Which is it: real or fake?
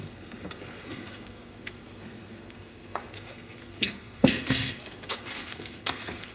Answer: fake